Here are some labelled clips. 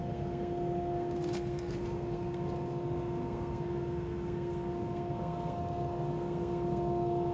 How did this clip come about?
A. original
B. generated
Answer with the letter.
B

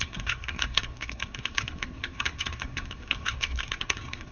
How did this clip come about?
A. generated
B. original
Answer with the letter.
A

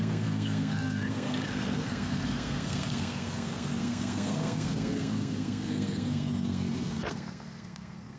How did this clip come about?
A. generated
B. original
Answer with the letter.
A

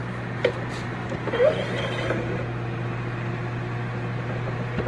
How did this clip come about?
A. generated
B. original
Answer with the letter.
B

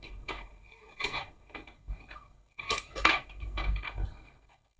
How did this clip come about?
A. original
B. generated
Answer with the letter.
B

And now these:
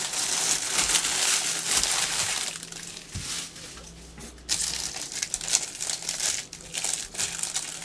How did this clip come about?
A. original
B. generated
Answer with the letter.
A